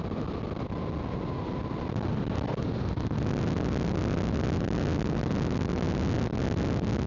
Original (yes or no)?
yes